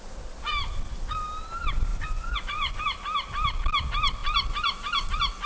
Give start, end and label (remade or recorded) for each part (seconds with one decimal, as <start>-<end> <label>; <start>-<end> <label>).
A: 0.0-1.9 recorded; 1.9-2.8 remade; 2.8-5.5 recorded